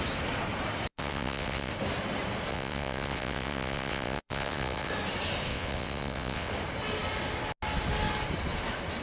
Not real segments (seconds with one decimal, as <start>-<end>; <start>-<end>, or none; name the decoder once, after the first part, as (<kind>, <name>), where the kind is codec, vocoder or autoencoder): 0.9-1.7 (vocoder, WaveNeXt); 2.5-4.9; 5.5-6.5